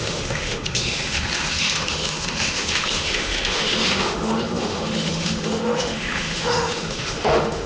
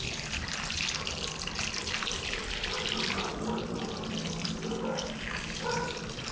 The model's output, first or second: first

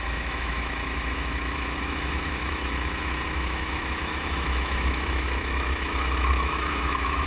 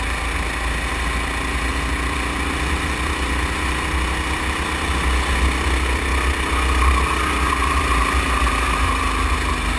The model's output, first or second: first